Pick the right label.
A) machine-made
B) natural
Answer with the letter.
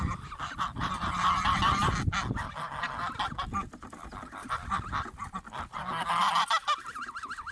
B